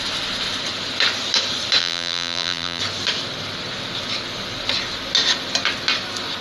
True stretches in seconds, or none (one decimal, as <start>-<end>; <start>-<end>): 0.0-1.8; 2.8-6.4